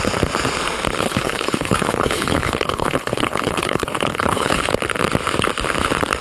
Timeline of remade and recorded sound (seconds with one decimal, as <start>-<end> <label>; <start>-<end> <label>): 0.0-1.0 recorded; 1.0-4.6 remade; 4.6-6.2 recorded